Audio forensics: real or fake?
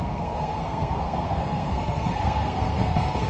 fake